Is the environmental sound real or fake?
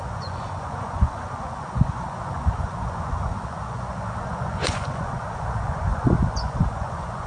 fake